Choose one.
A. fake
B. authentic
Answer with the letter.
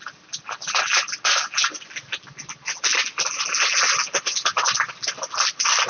B